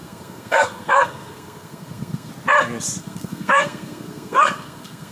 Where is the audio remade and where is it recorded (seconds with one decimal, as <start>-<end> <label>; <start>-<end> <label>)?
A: 0.0-2.3 remade; 2.3-3.0 recorded; 3.0-5.1 remade